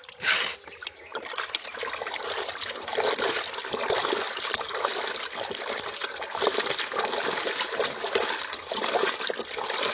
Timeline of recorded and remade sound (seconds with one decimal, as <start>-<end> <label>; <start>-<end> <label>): 0.0-9.9 remade